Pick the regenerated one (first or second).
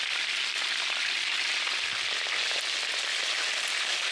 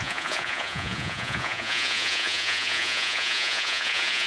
second